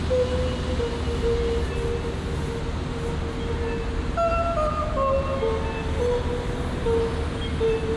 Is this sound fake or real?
real